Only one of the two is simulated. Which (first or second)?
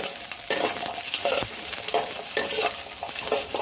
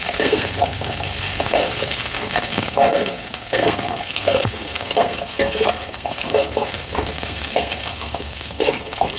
second